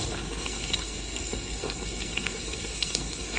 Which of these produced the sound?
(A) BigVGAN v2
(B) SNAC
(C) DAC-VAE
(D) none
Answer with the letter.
B